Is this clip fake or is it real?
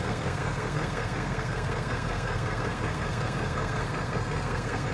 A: fake